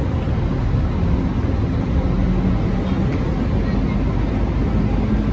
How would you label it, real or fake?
real